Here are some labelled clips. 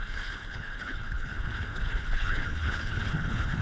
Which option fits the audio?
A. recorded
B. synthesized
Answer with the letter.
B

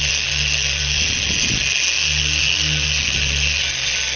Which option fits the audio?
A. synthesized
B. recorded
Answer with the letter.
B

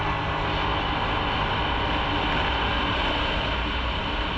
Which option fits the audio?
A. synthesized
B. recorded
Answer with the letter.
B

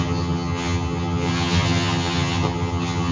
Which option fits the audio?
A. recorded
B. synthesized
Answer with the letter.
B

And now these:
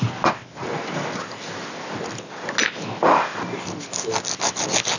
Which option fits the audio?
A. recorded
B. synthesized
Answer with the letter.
A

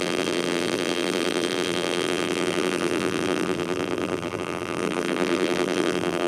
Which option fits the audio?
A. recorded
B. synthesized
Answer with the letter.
B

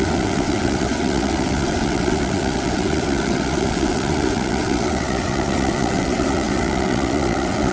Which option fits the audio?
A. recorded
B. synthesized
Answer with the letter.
B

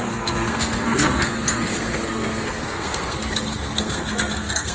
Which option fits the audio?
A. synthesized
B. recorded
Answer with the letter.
A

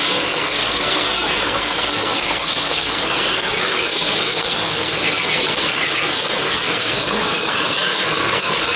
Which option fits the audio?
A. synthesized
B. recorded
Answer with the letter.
A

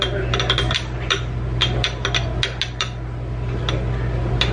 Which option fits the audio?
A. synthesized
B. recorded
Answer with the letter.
B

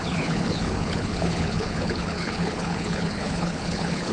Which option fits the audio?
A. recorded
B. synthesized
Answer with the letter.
B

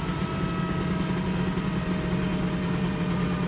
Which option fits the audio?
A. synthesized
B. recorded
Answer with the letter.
B